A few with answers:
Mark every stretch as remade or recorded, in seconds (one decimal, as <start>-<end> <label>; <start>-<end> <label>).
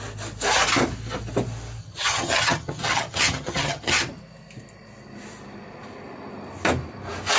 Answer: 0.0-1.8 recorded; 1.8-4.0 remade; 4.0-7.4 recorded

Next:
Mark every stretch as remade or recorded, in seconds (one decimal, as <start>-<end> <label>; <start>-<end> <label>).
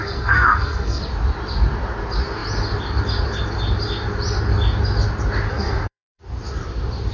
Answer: 0.0-1.0 remade; 1.0-5.5 recorded; 5.5-6.2 remade; 6.2-7.1 recorded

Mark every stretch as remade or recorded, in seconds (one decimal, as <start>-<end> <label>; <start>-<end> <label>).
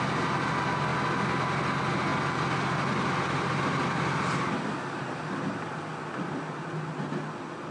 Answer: 0.0-7.7 recorded